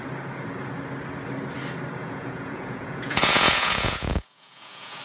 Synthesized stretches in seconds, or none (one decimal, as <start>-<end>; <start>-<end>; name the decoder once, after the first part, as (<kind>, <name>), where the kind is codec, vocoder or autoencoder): 2.0-5.0 (vocoder, Vocos)